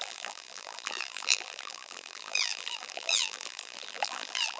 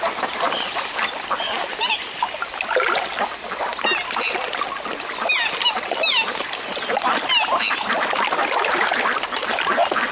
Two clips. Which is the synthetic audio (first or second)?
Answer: first